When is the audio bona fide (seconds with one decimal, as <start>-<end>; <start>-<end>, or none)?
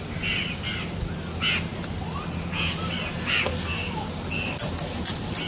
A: 0.0-5.5